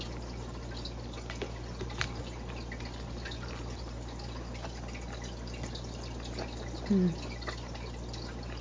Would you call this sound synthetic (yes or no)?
no